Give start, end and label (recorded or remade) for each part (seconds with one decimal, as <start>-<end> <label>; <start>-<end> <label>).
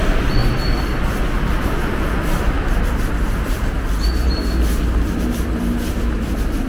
0.0-6.7 recorded